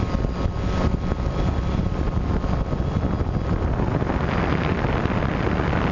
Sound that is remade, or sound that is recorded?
recorded